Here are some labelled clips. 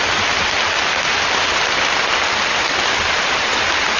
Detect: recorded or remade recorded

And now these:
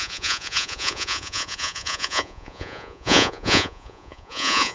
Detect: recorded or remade remade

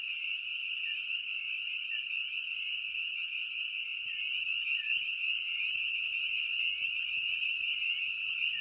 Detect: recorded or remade remade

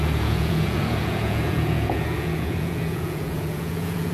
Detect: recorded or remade remade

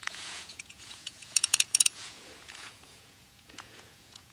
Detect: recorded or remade remade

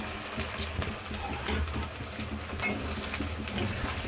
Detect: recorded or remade recorded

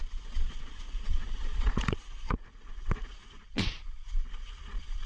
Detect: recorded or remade remade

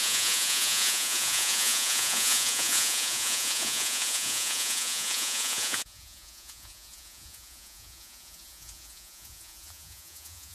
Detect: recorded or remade remade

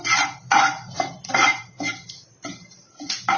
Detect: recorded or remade recorded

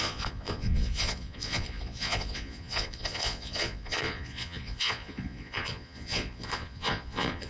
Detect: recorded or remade remade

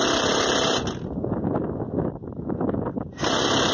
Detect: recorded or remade recorded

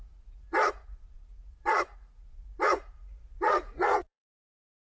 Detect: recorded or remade remade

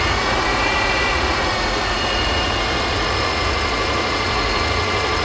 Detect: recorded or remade remade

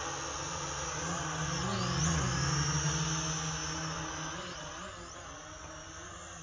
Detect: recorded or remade recorded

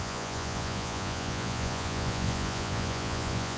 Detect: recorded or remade remade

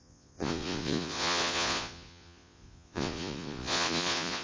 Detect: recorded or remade remade